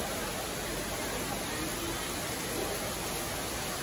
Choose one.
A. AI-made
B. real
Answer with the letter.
B